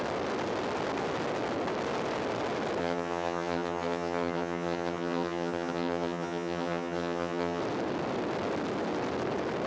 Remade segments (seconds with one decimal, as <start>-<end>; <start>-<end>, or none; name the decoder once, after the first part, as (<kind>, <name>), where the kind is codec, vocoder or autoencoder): 2.8-7.6 (vocoder, HiFi-GAN)